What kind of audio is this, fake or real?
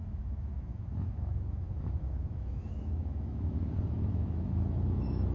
fake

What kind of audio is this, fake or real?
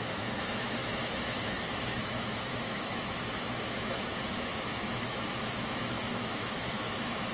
fake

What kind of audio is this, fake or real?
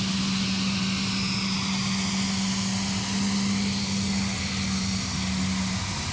real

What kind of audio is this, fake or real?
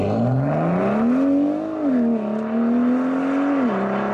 real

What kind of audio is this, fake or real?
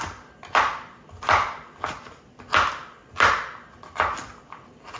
real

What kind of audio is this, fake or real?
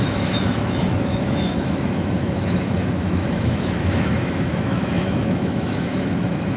fake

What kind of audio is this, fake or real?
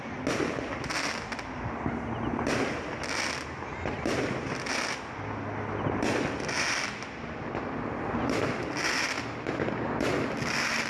real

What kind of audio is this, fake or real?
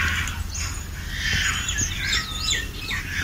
real